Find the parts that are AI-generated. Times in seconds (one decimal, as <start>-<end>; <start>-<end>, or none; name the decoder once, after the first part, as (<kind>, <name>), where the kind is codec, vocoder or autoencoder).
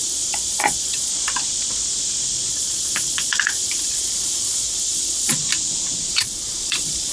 0.0-1.1 (vocoder, Vocos); 2.5-5.3; 6.1-7.1